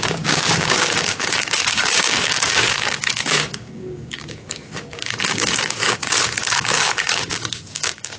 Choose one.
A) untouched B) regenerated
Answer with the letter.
B